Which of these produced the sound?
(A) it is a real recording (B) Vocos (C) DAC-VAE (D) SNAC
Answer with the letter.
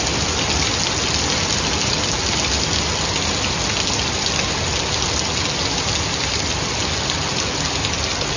A